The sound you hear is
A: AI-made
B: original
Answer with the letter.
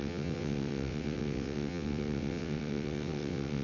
A